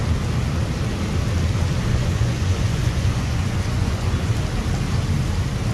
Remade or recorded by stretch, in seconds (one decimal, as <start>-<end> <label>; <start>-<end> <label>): 0.0-1.9 recorded; 1.9-4.3 remade; 4.3-5.7 recorded

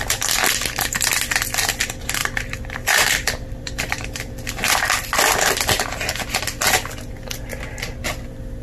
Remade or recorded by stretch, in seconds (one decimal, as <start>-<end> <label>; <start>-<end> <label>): 0.0-2.2 recorded; 2.2-4.7 remade; 4.7-8.6 recorded

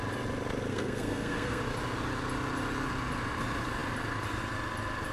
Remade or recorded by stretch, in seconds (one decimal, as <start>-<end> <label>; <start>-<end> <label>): 0.0-0.7 recorded; 0.7-1.6 remade; 1.6-5.1 recorded

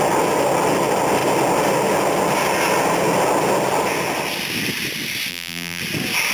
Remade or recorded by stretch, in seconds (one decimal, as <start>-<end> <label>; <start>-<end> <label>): 0.0-5.3 recorded; 5.3-5.8 remade; 5.8-6.3 recorded

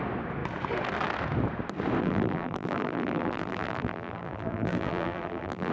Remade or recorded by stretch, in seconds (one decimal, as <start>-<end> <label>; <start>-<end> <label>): 0.0-2.0 recorded; 2.0-5.7 remade

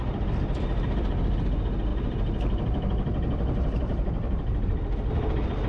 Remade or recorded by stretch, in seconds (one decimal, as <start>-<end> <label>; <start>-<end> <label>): 0.0-5.7 recorded

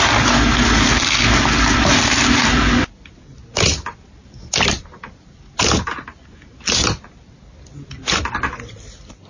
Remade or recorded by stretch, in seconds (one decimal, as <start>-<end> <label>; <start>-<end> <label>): 0.0-9.3 recorded

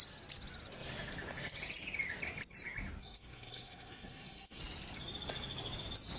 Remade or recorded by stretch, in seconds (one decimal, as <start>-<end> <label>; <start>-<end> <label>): 0.0-3.0 recorded; 3.0-4.6 remade; 4.6-6.2 recorded